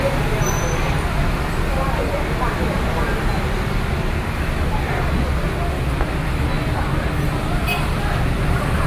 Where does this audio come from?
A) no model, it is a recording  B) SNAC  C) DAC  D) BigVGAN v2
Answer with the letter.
A